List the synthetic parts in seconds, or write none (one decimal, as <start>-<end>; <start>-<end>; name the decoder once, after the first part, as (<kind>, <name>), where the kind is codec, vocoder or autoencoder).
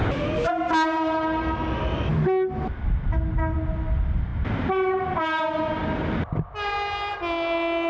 4.3-5.2 (vocoder, BigVGAN v2)